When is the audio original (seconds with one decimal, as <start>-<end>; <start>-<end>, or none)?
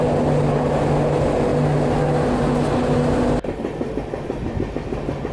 0.0-5.3